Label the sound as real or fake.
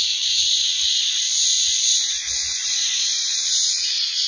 fake